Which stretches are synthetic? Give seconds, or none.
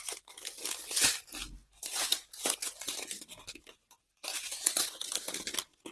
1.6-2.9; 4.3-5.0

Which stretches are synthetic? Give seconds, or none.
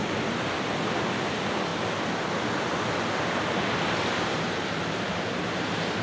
none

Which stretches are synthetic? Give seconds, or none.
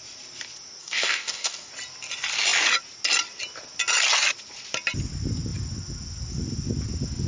0.8-1.7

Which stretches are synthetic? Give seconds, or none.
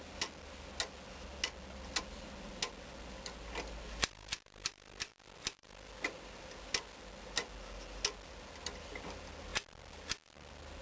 none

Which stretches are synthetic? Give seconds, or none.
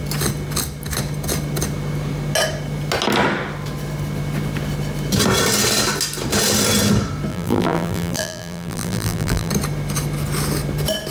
7.3-9.5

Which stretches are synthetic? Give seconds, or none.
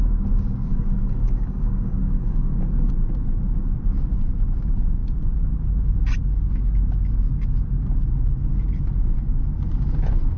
0.7-2.9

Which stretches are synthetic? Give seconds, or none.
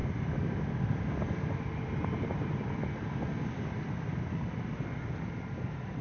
0.0-3.2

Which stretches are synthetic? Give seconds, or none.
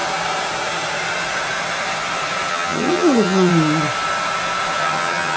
2.5-3.5; 4.8-5.4